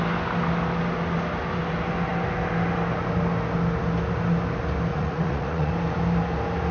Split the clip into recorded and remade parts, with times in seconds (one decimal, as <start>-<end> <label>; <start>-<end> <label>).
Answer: 0.0-4.9 recorded; 4.9-5.7 remade; 5.7-6.7 recorded

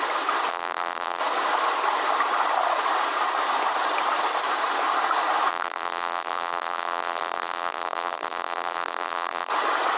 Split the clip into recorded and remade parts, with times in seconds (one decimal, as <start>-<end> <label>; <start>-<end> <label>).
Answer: 0.0-0.5 recorded; 0.5-1.2 remade; 1.2-5.5 recorded; 5.5-9.5 remade; 9.5-10.0 recorded

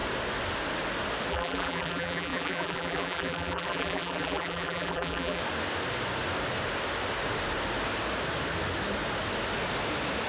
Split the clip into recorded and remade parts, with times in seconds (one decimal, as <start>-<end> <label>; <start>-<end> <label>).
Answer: 0.0-1.3 recorded; 1.3-5.4 remade; 5.4-10.3 recorded

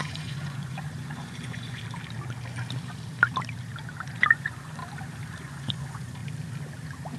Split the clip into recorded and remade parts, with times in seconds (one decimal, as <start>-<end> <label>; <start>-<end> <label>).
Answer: 0.0-1.8 remade; 1.8-4.2 recorded; 4.2-4.8 remade; 4.8-5.4 recorded; 5.4-6.2 remade; 6.2-7.2 recorded

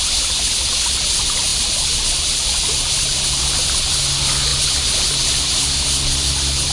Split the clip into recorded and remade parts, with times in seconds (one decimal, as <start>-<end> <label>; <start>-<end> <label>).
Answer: 0.0-1.5 recorded; 1.5-3.3 remade; 3.3-4.5 recorded; 4.5-5.1 remade; 5.1-6.7 recorded